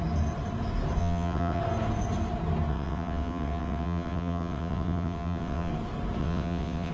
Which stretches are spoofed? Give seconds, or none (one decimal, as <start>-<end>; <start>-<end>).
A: 1.0-1.6; 2.7-5.7; 6.2-6.9